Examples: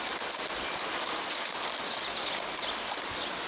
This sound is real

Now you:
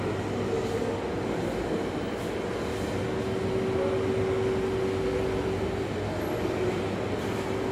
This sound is real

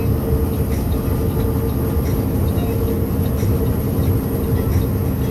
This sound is real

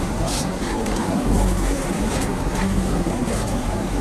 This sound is fake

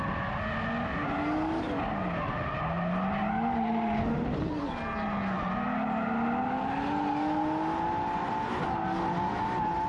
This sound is real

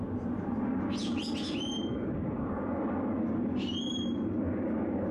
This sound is real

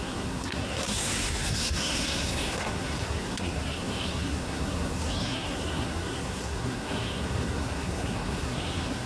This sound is fake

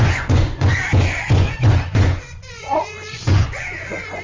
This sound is fake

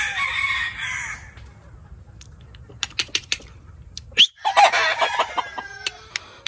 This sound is real